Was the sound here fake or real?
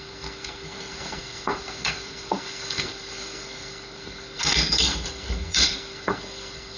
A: fake